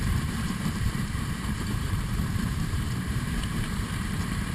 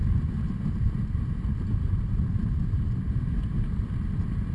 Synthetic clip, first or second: first